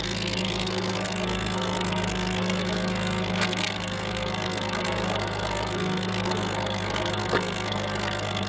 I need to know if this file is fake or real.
fake